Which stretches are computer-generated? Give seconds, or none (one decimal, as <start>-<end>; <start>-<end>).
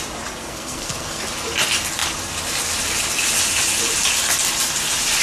0.4-1.2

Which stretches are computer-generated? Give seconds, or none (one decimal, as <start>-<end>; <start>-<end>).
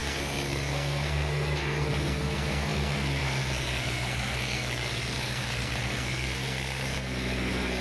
0.0-7.8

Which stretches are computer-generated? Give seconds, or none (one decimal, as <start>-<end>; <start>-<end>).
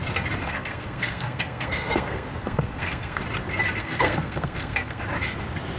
0.4-3.2; 3.8-5.0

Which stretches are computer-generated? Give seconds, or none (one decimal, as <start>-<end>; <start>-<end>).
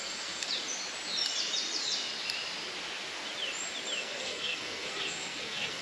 0.0-0.5; 4.0-5.8